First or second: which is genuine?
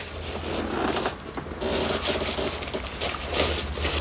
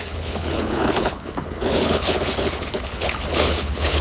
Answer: first